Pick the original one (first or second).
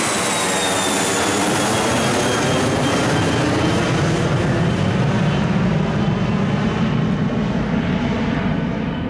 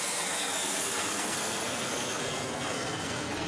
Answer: first